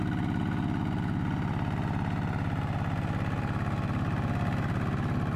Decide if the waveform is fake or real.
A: real